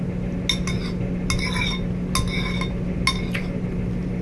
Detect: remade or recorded recorded